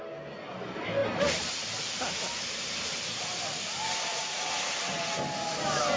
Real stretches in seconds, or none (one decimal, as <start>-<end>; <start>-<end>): 0.0-4.1; 4.7-6.0